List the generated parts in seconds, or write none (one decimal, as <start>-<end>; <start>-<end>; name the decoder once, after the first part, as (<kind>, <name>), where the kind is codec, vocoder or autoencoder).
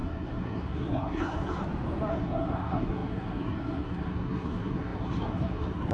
0.0-1.6 (codec, SNAC); 2.1-5.9